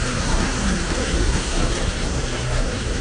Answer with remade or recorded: remade